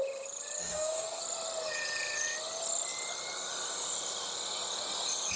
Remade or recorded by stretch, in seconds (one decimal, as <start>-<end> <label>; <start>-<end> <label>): 0.0-0.6 recorded; 0.6-1.2 remade; 1.2-5.4 recorded